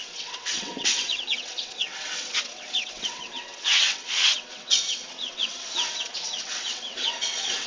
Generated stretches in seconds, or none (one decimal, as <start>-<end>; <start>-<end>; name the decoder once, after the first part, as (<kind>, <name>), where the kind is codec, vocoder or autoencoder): 0.0-7.7 (vocoder, WaveNeXt)